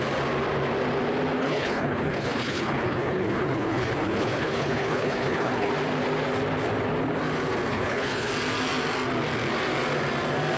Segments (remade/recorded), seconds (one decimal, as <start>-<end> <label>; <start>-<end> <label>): 0.0-1.4 recorded; 1.4-5.7 remade; 5.7-7.7 recorded; 7.7-8.3 remade; 8.3-10.6 recorded